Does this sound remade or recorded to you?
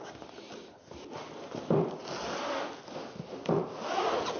recorded